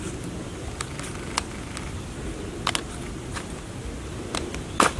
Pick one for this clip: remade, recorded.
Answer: recorded